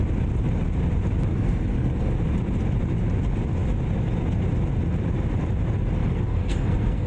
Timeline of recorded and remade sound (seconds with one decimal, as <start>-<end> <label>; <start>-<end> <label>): 0.0-1.3 recorded; 1.3-2.1 remade; 2.1-6.0 recorded; 6.0-7.1 remade